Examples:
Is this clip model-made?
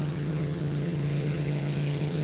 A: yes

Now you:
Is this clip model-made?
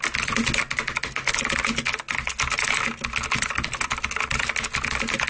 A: no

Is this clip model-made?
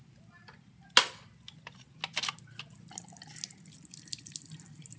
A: no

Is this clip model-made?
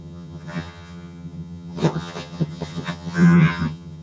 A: yes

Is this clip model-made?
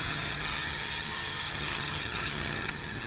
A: yes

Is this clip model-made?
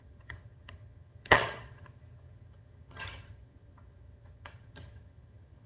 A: yes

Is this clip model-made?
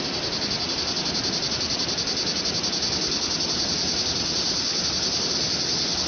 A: no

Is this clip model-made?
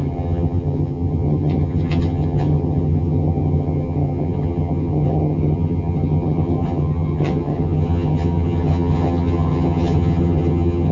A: yes